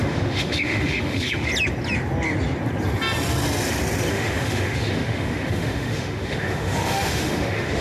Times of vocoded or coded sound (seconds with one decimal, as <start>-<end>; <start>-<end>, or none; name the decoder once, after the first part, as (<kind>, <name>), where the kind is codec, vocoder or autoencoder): 0.0-1.5 (autoencoder, DAC-VAE); 4.1-7.8